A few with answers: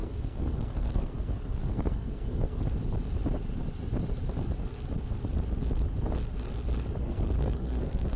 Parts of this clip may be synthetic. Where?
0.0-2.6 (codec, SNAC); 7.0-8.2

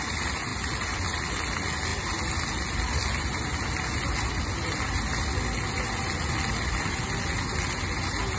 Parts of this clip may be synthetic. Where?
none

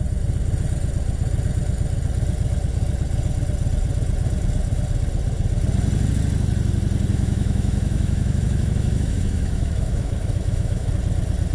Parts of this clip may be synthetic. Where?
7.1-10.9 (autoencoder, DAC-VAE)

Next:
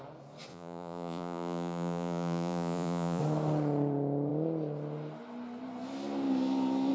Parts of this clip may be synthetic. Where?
0.5-3.2 (vocoder, Vocos)

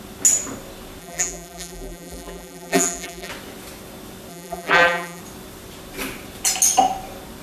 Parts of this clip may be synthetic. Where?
1.0-3.3 (vocoder, BigVGAN v2); 4.3-5.2

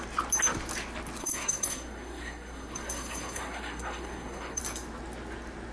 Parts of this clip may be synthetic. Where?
1.2-4.6 (codec, SNAC)

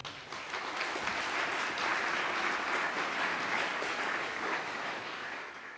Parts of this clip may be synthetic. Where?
3.5-5.8 (codec, DAC)

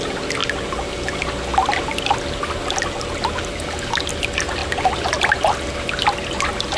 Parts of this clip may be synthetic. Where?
none